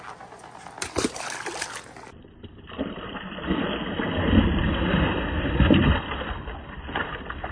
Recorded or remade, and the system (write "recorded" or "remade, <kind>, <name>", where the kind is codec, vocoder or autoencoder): recorded